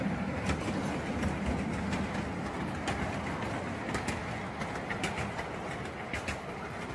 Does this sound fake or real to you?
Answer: real